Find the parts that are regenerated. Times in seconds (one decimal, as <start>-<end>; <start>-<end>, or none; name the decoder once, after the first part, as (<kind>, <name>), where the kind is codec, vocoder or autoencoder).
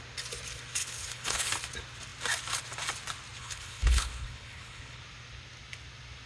0.8-1.5 (codec, HILCodec); 3.4-5.0